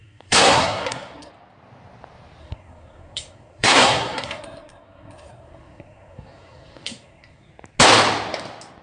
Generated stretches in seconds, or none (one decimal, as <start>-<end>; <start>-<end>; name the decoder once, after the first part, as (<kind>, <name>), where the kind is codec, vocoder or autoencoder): 0.0-1.3 (codec, SNAC); 2.4-7.5